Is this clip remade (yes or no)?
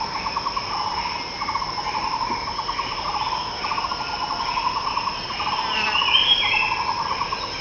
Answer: no